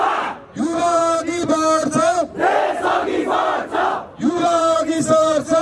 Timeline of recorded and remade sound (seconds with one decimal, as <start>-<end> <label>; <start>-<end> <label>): 0.0-1.0 remade; 1.0-4.3 recorded; 4.3-5.6 remade